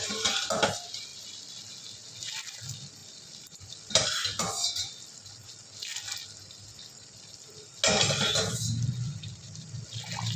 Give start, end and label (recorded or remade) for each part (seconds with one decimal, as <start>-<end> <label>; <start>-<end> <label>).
0.0-1.1 recorded; 1.1-1.7 remade; 1.7-3.0 recorded; 3.0-5.3 remade; 5.3-10.4 recorded